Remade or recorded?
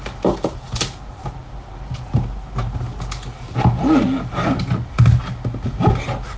recorded